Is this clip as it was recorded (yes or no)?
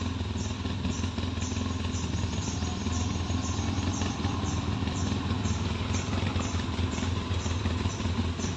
yes